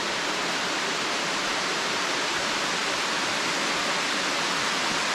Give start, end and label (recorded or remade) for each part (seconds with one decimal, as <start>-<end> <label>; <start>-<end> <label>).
0.0-1.4 recorded; 1.4-2.4 remade; 2.4-5.1 recorded